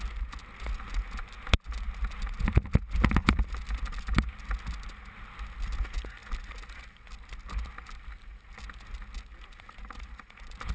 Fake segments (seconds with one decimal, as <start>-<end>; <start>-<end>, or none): none